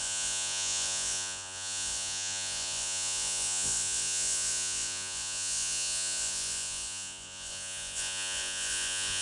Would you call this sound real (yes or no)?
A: no